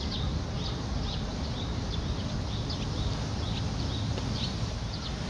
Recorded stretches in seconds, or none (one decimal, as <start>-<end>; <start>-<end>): 1.3-4.5